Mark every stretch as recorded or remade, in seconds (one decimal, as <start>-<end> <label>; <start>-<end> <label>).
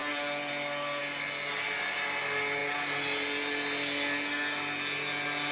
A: 0.0-5.5 recorded